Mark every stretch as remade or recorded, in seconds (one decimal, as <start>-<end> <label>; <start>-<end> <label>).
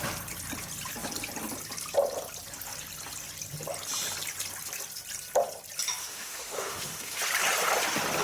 0.0-6.0 recorded; 6.0-7.2 remade; 7.2-8.2 recorded